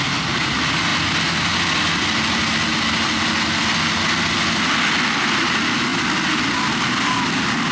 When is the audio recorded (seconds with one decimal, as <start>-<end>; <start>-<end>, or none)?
0.0-7.7